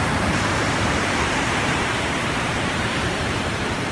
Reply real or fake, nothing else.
fake